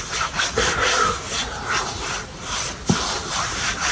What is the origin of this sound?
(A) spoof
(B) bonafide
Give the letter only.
B